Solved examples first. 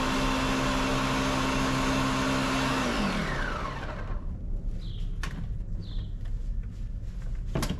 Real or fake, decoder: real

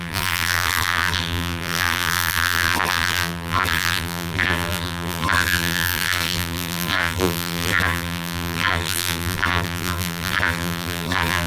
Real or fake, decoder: fake, vocoder, BigVGAN v2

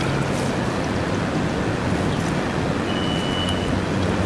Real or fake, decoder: real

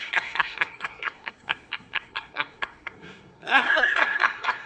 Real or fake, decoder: fake, codec, SNAC